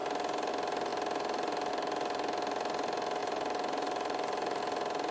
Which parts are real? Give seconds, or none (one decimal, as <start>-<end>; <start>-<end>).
0.0-3.2; 4.6-5.1